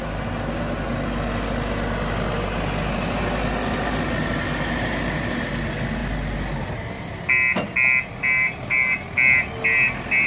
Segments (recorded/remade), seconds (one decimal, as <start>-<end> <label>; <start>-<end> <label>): 0.0-10.3 recorded